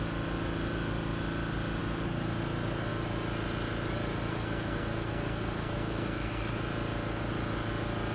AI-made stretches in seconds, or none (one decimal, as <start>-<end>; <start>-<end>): 4.3-6.5